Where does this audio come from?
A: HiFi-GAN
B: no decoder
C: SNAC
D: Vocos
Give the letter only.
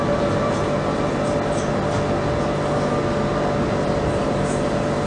B